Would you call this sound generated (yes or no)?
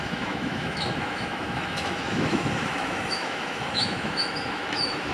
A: yes